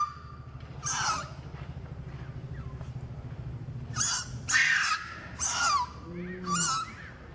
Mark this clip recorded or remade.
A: recorded